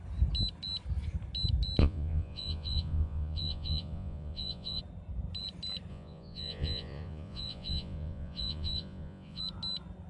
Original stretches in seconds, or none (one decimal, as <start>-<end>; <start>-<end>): 0.0-1.8; 4.8-5.9; 9.4-10.1